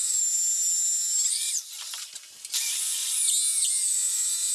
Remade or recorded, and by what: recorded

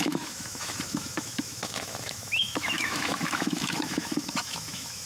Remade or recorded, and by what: remade, autoencoder, DAC-VAE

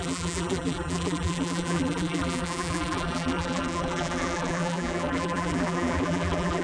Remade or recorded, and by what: remade, vocoder, BigVGAN v2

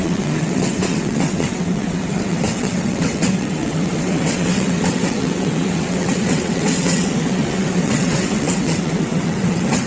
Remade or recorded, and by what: remade, vocoder, WaveNeXt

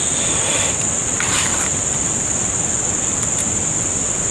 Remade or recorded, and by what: remade, vocoder, BigVGAN v2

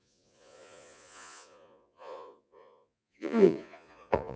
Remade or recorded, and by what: remade, vocoder, Vocos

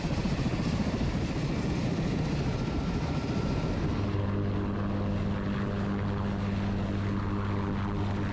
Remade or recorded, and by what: recorded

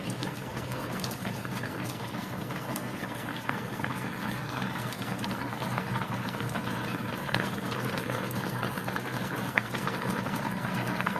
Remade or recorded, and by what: remade, codec, SNAC